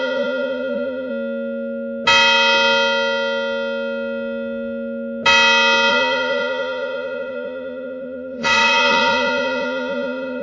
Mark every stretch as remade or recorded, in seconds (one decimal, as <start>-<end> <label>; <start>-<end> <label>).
0.0-1.1 remade; 1.1-5.9 recorded; 5.9-10.4 remade